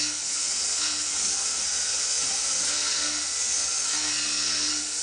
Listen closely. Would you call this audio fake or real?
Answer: fake